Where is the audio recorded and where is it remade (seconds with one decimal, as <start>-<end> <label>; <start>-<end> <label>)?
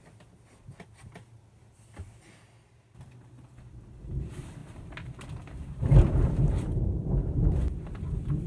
0.0-4.6 recorded; 4.6-7.5 remade; 7.5-8.5 recorded